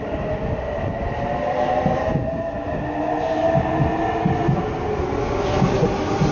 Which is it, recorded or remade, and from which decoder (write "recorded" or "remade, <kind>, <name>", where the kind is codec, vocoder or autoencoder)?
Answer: recorded